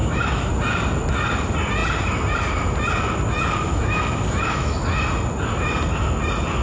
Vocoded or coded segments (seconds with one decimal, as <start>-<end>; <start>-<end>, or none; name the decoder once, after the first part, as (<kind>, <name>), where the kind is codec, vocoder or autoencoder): 0.0-0.5 (autoencoder, DAC-VAE); 3.7-4.8

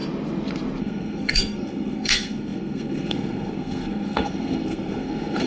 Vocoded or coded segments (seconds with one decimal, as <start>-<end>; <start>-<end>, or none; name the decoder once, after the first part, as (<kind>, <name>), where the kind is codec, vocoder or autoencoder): 0.8-5.5 (codec, SNAC)

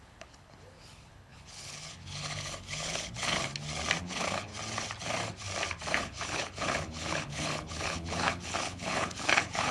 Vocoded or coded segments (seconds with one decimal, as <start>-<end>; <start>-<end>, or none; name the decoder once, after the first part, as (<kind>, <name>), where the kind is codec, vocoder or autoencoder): 0.0-3.5 (codec, HILCodec); 4.0-4.5; 5.9-9.7

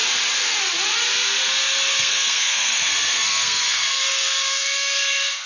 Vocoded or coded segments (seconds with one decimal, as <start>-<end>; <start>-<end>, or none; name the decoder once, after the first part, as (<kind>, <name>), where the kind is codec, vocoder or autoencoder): 1.9-5.5 (codec, SNAC)

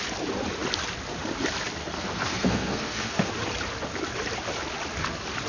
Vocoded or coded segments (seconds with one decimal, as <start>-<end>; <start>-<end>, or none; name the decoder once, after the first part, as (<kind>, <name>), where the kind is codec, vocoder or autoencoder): 1.8-3.3 (codec, SNAC)